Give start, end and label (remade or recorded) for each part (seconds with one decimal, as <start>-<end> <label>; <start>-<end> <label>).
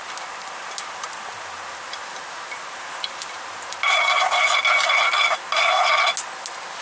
0.0-6.8 recorded